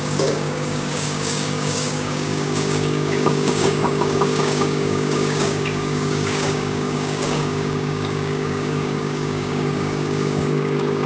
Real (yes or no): no